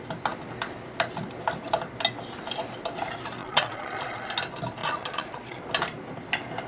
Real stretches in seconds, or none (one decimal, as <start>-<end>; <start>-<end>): 0.0-3.4; 4.3-4.8; 5.6-6.7